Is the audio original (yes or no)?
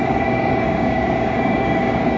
no